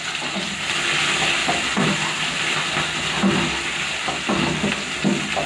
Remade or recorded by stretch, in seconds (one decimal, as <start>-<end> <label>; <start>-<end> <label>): 0.0-5.5 recorded